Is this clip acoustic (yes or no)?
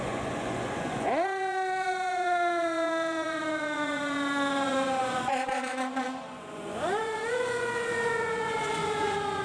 no